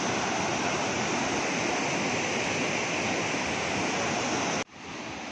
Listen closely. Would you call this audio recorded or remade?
recorded